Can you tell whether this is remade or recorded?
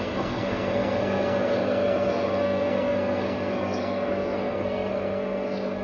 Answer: remade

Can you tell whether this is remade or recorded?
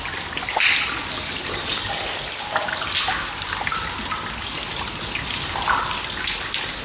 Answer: recorded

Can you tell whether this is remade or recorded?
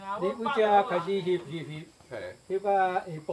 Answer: remade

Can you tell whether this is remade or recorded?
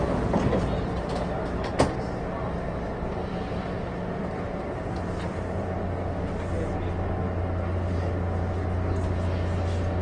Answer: recorded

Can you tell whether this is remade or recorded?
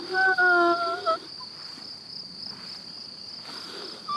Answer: recorded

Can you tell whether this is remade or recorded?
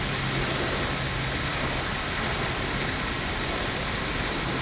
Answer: recorded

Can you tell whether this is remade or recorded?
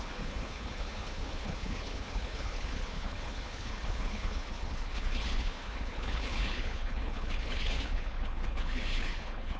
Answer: remade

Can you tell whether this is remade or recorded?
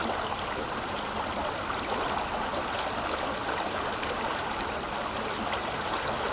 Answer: recorded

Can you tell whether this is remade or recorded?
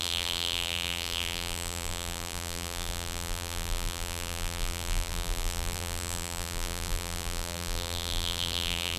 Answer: remade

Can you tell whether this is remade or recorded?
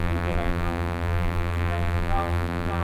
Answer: remade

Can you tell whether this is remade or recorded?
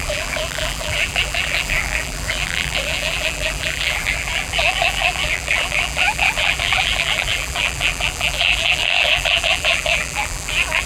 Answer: remade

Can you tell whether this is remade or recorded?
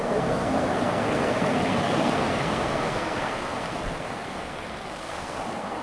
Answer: remade